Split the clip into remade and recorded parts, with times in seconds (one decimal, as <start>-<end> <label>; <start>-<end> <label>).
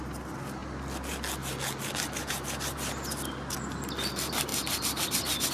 0.0-5.5 recorded